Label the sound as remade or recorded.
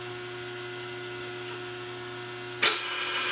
recorded